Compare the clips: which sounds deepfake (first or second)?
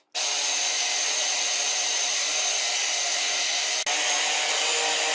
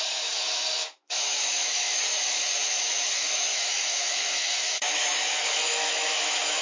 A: second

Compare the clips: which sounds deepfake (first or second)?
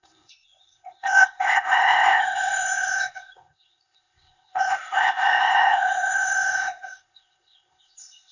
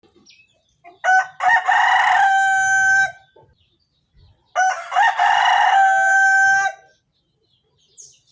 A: first